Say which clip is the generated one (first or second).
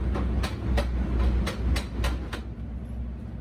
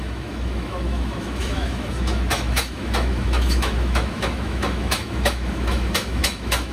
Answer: second